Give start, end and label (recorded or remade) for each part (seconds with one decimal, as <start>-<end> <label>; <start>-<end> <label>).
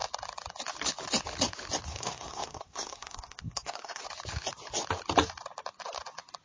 0.0-1.9 recorded; 1.9-4.0 remade; 4.0-6.4 recorded